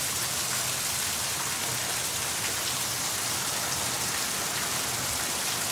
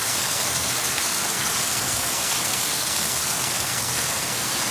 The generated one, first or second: second